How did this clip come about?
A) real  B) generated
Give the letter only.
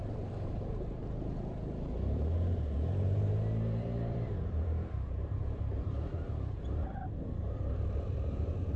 B